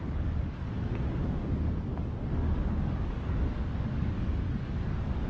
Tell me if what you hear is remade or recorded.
remade